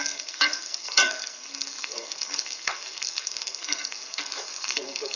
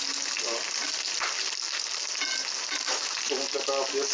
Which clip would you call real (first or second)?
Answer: second